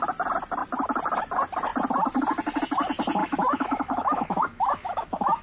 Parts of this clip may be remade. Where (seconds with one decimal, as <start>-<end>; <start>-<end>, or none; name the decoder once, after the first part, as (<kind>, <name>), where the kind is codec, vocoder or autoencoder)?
3.2-5.4 (autoencoder, DAC-VAE)